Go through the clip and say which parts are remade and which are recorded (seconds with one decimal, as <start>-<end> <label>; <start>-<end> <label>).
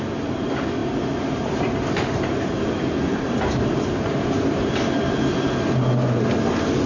0.0-0.8 recorded; 0.8-2.3 remade; 2.3-3.1 recorded; 3.1-4.7 remade; 4.7-6.9 recorded